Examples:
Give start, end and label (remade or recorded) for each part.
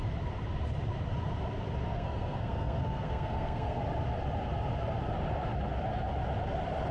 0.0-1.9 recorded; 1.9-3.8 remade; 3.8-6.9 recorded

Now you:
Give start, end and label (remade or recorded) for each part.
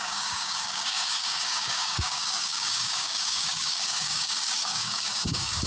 0.0-5.7 remade